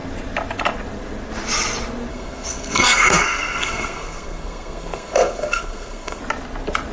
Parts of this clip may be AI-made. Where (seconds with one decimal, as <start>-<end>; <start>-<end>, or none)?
2.1-6.2

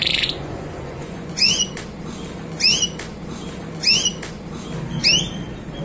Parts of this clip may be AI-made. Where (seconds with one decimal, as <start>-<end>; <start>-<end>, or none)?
0.0-1.8

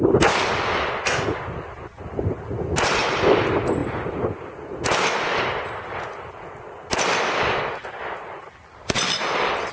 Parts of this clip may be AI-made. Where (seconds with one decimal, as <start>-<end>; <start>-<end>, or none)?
none

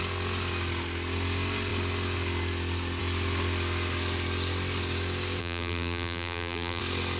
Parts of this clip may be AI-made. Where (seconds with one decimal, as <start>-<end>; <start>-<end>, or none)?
5.4-6.8

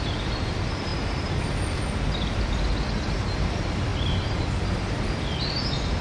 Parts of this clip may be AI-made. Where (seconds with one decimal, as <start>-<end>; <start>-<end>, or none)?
0.0-0.9; 3.4-6.0

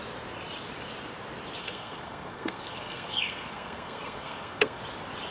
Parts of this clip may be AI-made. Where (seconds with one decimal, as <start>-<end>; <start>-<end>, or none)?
1.6-4.8